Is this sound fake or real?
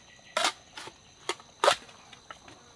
real